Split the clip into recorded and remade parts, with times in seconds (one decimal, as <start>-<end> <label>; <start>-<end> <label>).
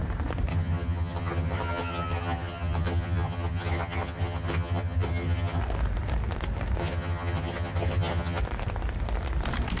0.0-0.5 recorded; 0.5-5.6 remade; 5.6-6.8 recorded; 6.8-8.4 remade; 8.4-9.8 recorded